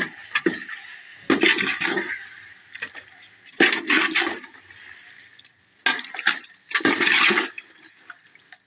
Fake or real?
real